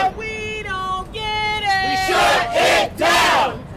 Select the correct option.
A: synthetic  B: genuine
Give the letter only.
B